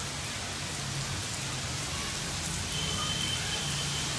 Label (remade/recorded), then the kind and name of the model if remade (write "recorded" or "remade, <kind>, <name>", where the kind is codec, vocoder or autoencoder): recorded